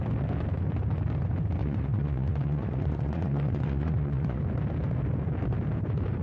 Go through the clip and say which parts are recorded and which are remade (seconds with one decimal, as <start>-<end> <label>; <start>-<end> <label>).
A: 0.0-1.6 recorded; 1.6-4.4 remade; 4.4-6.2 recorded